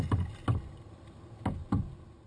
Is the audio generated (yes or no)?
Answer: no